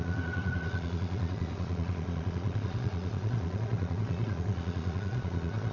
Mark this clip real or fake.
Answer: fake